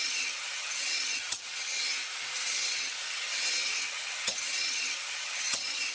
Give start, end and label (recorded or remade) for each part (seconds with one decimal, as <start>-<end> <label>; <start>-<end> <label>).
0.0-1.9 remade; 1.9-2.5 recorded; 2.5-5.9 remade